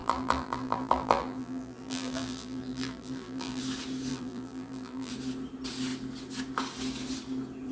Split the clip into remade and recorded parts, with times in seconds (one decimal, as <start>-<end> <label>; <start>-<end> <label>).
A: 0.0-3.6 remade; 3.6-4.1 recorded; 4.1-5.1 remade; 5.1-7.7 recorded